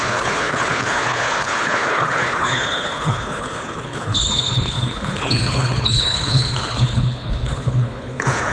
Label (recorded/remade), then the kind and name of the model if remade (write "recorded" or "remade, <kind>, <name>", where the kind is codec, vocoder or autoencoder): remade, codec, HILCodec